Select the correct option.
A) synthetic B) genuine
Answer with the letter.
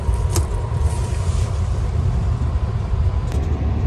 A